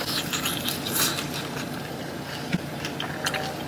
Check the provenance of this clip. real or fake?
real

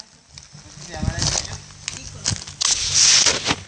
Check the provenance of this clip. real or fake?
real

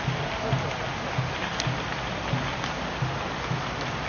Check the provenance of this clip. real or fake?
real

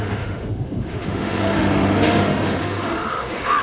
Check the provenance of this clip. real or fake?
fake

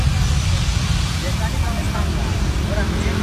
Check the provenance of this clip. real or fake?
real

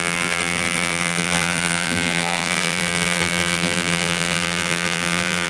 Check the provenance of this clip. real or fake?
fake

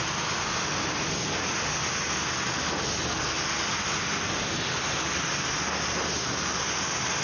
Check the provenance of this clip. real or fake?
real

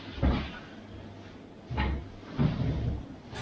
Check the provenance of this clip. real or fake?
real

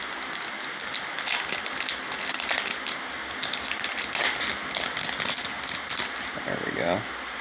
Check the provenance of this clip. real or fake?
real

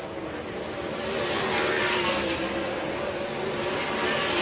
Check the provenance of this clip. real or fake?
real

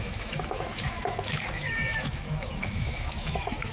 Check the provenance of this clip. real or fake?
fake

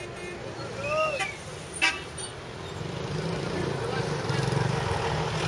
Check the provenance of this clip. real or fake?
real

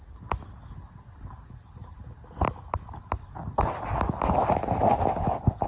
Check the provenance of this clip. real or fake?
real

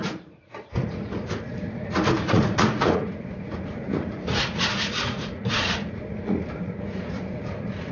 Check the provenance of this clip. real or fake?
fake